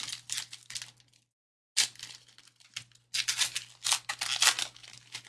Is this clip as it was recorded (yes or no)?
yes